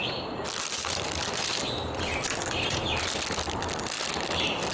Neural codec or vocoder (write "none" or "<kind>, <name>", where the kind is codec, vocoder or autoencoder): none